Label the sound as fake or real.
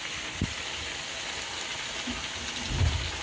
real